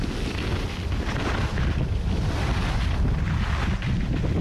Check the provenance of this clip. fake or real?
real